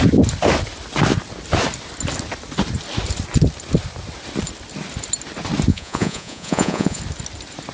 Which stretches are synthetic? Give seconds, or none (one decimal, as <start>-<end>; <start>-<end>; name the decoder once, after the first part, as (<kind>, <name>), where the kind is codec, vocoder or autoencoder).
5.7-7.0 (vocoder, Vocos)